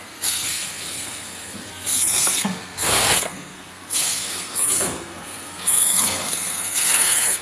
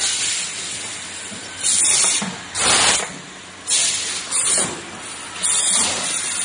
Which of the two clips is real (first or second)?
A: second